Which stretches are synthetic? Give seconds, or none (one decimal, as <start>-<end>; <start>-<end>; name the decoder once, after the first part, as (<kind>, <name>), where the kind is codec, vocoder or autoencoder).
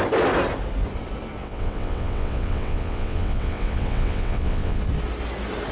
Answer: 1.4-4.8 (vocoder, WaveNeXt)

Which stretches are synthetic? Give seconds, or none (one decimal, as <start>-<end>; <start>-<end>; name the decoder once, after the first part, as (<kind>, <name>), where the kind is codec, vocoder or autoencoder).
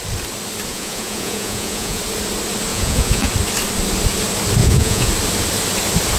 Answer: 0.7-2.0 (vocoder, Vocos); 2.7-3.3; 4.6-5.1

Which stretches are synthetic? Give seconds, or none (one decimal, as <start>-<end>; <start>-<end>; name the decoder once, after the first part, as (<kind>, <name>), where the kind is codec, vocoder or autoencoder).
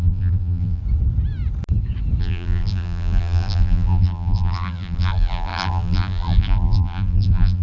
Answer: 0.0-0.8 (vocoder, BigVGAN v2); 2.2-7.6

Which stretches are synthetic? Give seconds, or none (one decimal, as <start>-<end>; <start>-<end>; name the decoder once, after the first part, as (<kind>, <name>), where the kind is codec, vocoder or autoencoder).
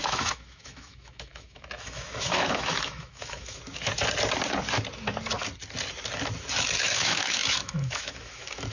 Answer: 0.0-3.6 (autoencoder, DAC-VAE); 6.8-8.7